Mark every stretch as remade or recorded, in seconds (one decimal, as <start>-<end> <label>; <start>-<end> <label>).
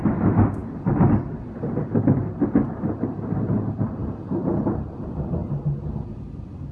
0.0-5.4 remade; 5.4-6.7 recorded